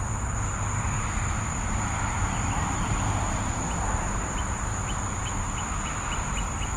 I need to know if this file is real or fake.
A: real